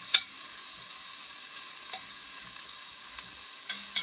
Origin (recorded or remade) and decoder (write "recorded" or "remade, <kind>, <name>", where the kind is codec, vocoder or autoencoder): remade, codec, DAC